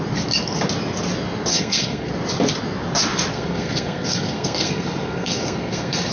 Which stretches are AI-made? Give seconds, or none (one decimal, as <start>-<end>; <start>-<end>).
1.5-2.1; 3.3-6.1